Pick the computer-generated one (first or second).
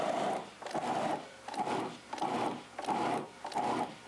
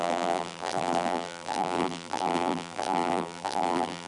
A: second